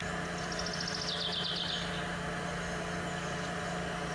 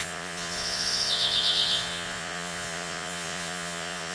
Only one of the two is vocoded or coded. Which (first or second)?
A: second